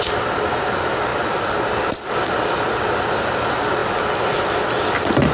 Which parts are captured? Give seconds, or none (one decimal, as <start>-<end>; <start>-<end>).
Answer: 1.1-2.3; 3.8-4.3